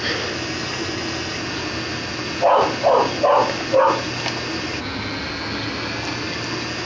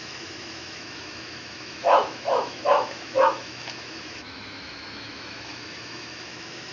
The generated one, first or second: second